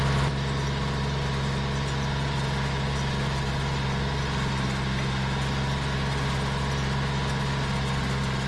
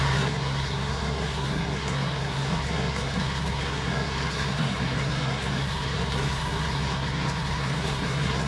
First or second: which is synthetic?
second